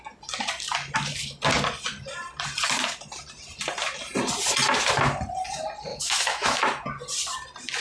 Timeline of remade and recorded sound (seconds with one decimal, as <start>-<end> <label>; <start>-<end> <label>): 0.0-5.9 recorded; 5.9-6.6 remade; 6.6-7.8 recorded